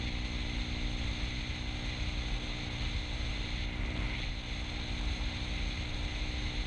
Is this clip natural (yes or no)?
yes